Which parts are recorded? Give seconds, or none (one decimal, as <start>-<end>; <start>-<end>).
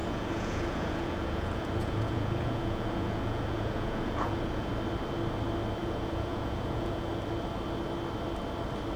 4.7-5.8; 7.1-9.0